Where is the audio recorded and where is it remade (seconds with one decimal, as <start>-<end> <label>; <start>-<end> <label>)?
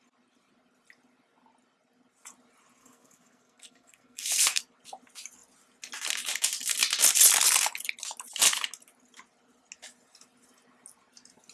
0.0-2.8 recorded; 2.8-4.6 remade; 4.6-11.5 recorded